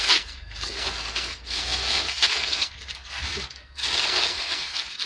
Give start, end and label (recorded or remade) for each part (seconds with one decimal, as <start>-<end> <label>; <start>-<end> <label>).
0.0-5.1 remade